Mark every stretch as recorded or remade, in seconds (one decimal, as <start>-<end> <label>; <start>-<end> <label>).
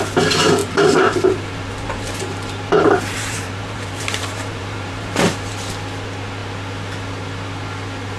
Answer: 0.0-0.6 recorded; 0.6-5.5 remade; 5.5-8.2 recorded